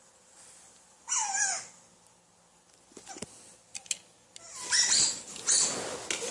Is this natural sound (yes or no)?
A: yes